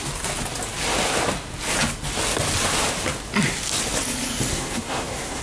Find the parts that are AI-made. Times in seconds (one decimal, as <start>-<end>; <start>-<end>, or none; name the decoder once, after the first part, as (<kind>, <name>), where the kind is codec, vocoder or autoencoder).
4.5-5.4 (codec, SNAC)